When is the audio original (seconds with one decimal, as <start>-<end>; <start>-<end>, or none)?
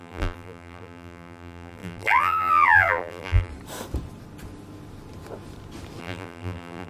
3.5-6.0